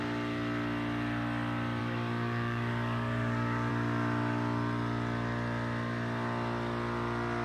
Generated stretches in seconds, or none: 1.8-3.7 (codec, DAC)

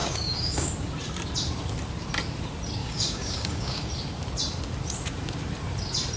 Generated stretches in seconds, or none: 0.0-0.7 (codec, DAC); 2.8-3.9

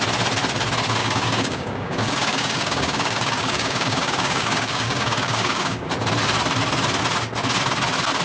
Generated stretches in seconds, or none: 1.0-5.9 (codec, DAC)

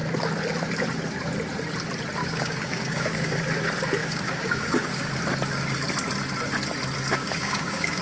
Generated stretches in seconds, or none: 2.2-3.4 (codec, DAC); 4.0-5.2; 7.2-8.0

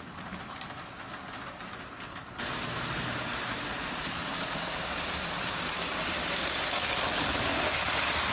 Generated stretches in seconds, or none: none

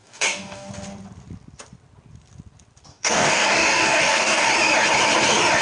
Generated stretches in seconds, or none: 0.0-0.7 (codec, DAC); 2.9-4.5

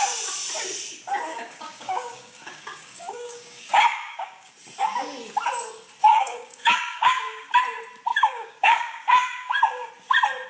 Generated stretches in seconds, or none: 1.3-4.5 (codec, DAC); 6.0-7.6; 8.1-9.9

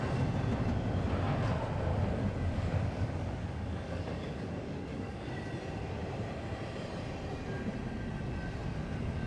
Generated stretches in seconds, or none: 1.9-5.3 (codec, DAC)